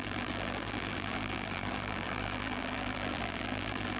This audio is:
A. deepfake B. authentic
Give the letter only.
A